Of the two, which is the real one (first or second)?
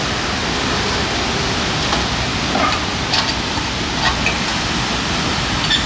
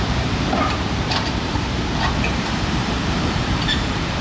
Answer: first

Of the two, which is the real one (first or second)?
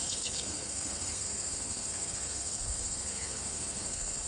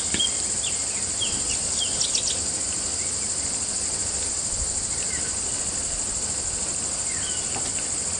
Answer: second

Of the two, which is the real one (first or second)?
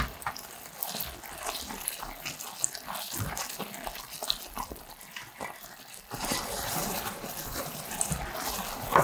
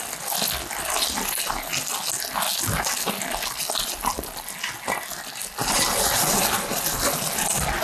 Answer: second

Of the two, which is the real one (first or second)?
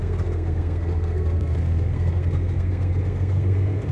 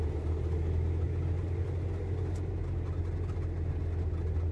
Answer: second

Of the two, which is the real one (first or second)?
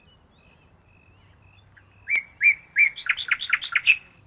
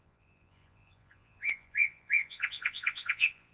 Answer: first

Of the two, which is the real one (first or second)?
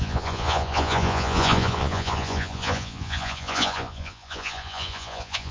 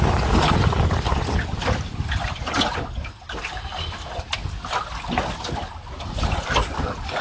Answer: second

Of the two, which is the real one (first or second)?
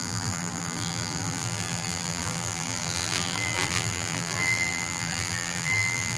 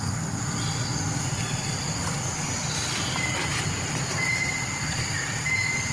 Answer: second